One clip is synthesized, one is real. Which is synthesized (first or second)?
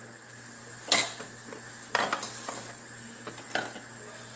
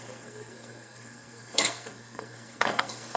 second